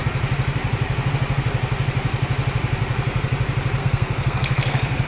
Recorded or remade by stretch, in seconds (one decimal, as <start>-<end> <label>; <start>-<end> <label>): 0.0-3.8 recorded; 3.8-5.1 remade